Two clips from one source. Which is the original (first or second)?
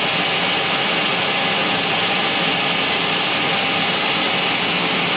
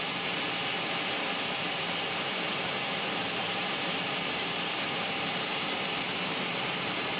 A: first